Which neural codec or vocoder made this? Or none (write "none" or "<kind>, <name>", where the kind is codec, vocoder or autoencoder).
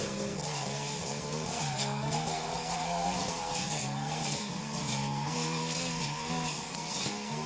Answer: codec, SNAC